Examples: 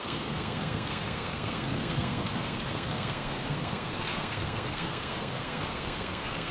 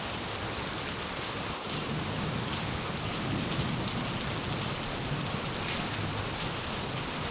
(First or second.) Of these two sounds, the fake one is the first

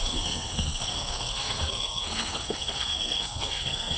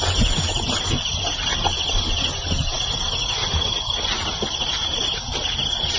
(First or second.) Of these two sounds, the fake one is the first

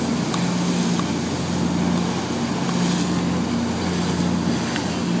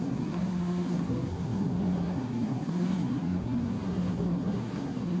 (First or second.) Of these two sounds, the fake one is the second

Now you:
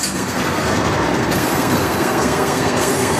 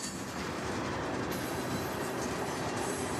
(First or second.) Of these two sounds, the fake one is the first